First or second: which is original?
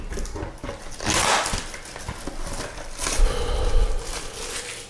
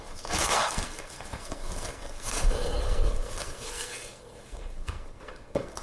first